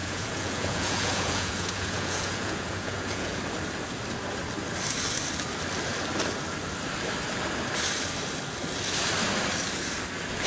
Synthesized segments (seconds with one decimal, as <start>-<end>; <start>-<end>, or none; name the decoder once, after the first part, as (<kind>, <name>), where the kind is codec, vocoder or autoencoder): 0.0-3.4 (vocoder, Vocos)